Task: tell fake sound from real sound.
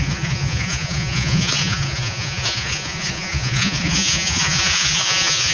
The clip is fake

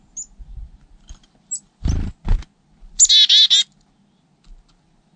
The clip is real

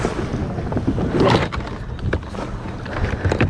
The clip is real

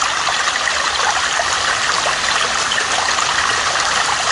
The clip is real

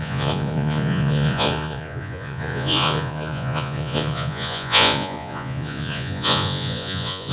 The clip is fake